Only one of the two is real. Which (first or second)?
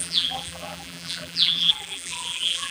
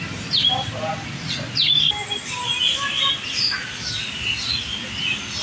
second